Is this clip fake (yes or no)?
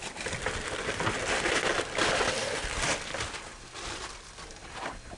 yes